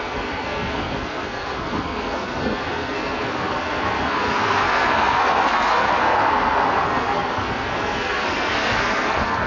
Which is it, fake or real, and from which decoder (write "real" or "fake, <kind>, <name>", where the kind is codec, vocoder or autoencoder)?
fake, codec, SNAC